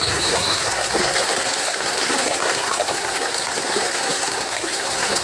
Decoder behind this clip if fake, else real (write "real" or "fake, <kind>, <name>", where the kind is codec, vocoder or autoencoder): fake, codec, SNAC